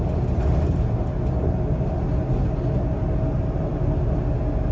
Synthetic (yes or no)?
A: no